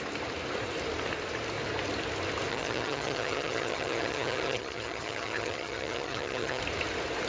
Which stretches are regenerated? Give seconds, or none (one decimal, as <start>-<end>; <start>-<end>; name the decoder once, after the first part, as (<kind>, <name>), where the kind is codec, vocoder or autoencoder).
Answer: 2.5-6.6 (vocoder, HiFi-GAN)